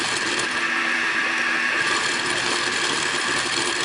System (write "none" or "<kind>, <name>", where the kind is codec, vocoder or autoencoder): none